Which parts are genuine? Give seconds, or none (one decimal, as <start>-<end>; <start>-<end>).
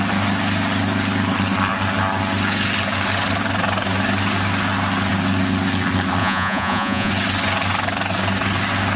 0.0-6.2; 7.1-9.0